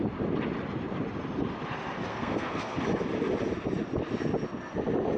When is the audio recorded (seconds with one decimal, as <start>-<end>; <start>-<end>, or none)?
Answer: 0.0-2.1; 2.8-5.2